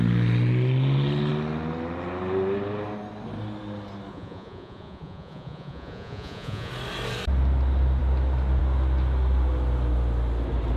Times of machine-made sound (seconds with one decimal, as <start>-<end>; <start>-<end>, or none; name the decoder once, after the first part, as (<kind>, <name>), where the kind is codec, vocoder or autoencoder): 4.1-6.7 (vocoder, Vocos)